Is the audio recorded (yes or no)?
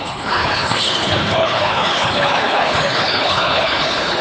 no